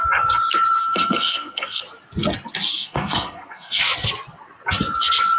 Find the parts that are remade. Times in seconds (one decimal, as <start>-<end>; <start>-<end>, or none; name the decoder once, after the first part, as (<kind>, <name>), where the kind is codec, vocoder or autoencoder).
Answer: 0.8-1.8 (codec, SNAC); 2.7-3.8